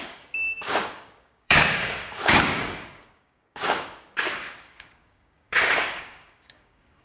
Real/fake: fake